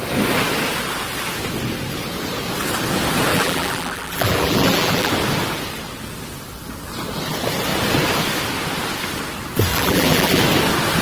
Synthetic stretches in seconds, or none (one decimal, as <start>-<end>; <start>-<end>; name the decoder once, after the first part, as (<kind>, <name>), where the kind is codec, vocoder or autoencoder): 3.3-5.1 (vocoder, BigVGAN v2); 9.7-10.4